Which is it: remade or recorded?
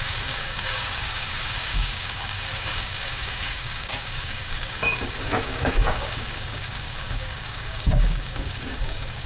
remade